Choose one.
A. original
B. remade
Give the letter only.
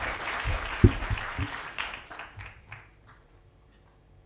B